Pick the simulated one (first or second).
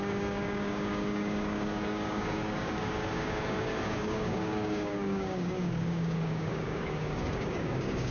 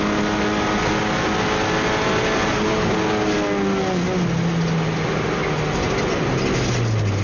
first